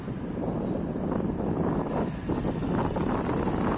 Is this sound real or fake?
real